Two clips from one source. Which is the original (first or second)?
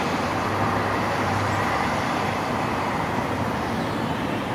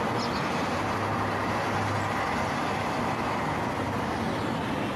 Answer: second